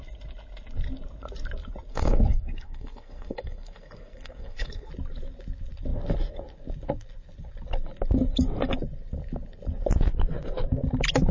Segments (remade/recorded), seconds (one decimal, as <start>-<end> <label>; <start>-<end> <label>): 0.0-1.9 recorded; 1.9-4.9 remade; 4.9-11.3 recorded

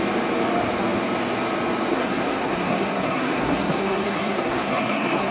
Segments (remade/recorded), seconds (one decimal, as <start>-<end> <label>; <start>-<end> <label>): 0.0-1.9 recorded; 1.9-5.3 remade

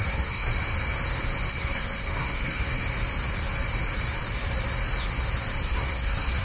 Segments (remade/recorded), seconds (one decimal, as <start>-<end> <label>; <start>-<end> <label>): 0.0-0.5 remade; 0.5-1.5 recorded; 1.5-2.8 remade; 2.8-5.6 recorded; 5.6-6.4 remade

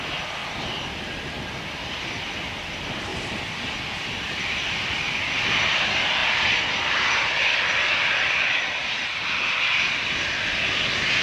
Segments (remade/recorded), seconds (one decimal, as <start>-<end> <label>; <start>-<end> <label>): 0.0-3.1 recorded; 3.1-4.6 remade; 4.6-6.2 recorded; 6.2-8.4 remade; 8.4-8.8 recorded; 8.8-9.6 remade; 9.6-11.2 recorded

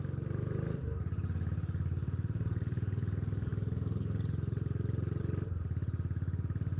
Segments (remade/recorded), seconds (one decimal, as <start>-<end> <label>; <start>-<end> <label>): 0.0-6.8 recorded

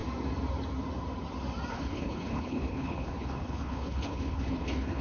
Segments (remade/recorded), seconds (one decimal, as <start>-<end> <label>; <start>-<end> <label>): 0.0-1.7 recorded; 1.7-5.0 remade